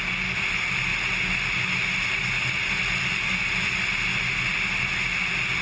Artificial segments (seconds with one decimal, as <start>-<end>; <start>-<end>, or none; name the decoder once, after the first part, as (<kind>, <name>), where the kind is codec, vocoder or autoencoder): none